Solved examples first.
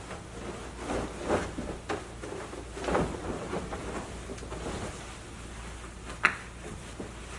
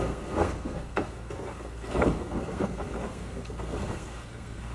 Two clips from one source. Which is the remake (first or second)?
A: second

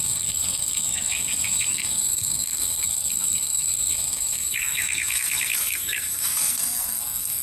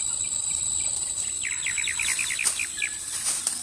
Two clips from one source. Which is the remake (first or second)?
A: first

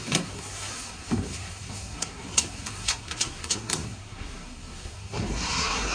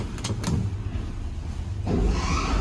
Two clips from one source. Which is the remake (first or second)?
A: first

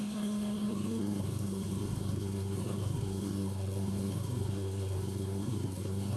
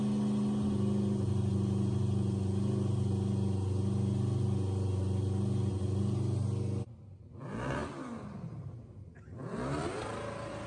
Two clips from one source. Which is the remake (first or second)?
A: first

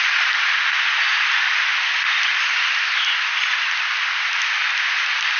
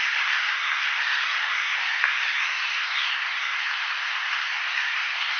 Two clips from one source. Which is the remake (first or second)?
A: second